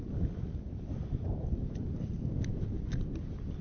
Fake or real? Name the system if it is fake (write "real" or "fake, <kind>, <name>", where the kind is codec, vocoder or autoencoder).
real